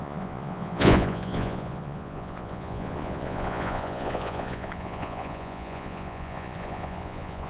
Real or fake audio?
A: fake